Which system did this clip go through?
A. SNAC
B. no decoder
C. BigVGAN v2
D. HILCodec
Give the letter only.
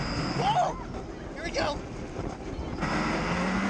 B